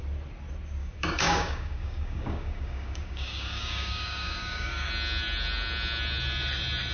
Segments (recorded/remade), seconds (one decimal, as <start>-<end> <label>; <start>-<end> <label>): 0.0-0.8 recorded; 0.8-4.9 remade; 4.9-6.9 recorded